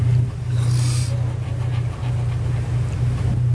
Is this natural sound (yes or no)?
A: yes